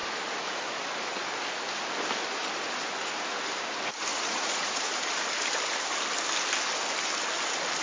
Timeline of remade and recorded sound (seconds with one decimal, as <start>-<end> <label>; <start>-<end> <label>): 0.0-4.1 recorded; 4.1-5.0 remade; 5.0-7.8 recorded